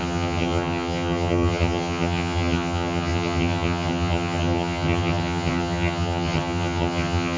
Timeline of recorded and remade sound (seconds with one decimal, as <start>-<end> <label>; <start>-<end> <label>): 0.0-7.4 remade